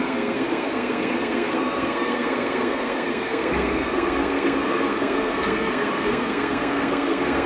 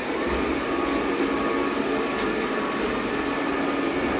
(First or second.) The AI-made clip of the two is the first